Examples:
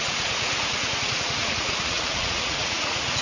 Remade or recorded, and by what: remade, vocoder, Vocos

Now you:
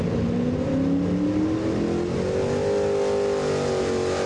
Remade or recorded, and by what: recorded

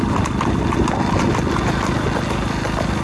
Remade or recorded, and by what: recorded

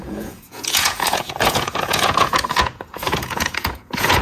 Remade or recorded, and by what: remade, vocoder, Vocos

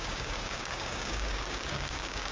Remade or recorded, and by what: remade, codec, DAC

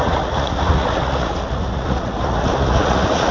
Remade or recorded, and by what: remade, vocoder, Vocos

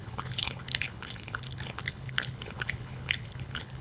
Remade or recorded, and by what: remade, codec, HILCodec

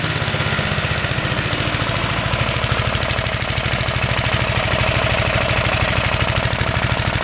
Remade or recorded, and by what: recorded